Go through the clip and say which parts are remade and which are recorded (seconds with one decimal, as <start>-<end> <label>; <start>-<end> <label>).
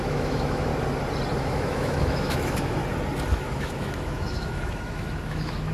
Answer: 0.0-0.7 remade; 0.7-1.4 recorded; 1.4-2.8 remade; 2.8-3.3 recorded; 3.3-5.7 remade